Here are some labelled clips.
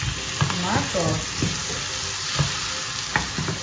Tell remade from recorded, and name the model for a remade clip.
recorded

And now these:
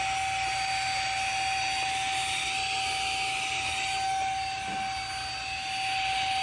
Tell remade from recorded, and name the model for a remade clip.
recorded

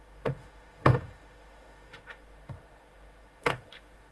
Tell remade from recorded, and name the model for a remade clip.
remade, autoencoder, DAC-VAE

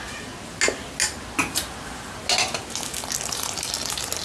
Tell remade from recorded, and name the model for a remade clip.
recorded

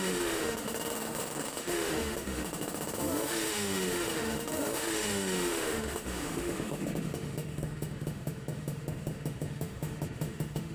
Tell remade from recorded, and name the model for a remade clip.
remade, autoencoder, DAC-VAE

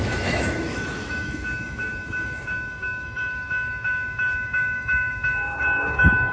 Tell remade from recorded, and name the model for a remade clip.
remade, autoencoder, DAC-VAE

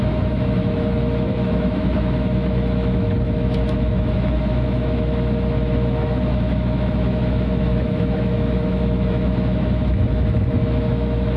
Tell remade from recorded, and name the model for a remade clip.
remade, autoencoder, DAC-VAE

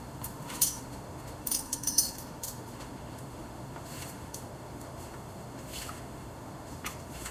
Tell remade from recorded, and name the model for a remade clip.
remade, autoencoder, DAC-VAE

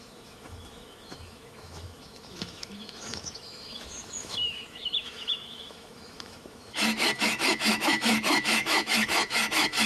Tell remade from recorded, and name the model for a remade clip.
remade, autoencoder, DAC-VAE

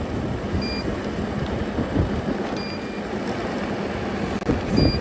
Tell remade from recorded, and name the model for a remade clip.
recorded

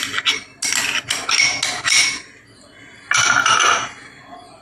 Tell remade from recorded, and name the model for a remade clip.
recorded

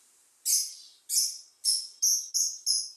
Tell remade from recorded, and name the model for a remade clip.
recorded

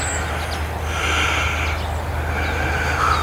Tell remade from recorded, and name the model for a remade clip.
recorded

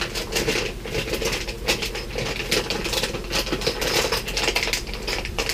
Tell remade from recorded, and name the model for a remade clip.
recorded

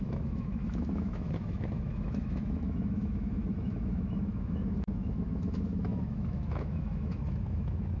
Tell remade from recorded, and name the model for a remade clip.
remade, autoencoder, DAC-VAE